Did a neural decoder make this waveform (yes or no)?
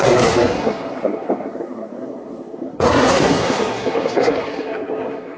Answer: yes